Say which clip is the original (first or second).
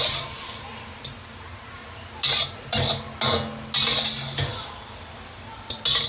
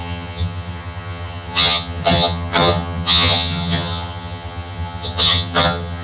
first